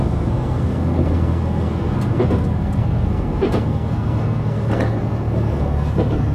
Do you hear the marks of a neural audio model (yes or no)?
yes